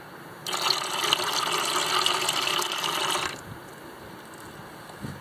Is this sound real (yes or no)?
yes